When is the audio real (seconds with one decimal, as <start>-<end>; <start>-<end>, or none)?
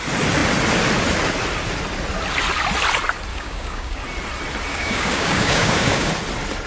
0.0-3.3; 4.0-4.7; 6.1-6.7